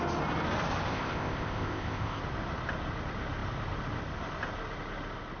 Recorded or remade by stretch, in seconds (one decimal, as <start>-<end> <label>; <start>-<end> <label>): 0.0-0.9 recorded; 0.9-2.2 remade; 2.2-5.4 recorded